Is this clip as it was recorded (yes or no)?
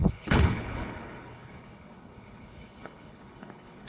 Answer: no